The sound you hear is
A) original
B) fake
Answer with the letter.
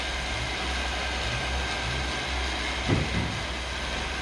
A